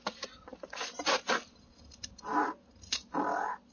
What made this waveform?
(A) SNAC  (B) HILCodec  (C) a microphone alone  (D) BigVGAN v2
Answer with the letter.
C